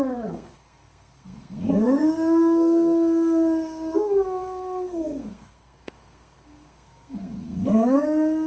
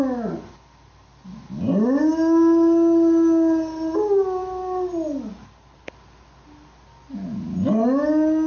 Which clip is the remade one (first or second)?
first